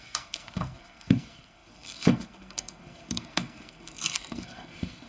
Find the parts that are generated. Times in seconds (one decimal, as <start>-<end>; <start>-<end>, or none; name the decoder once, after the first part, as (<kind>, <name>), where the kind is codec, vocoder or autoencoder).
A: 0.0-5.1 (codec, SNAC)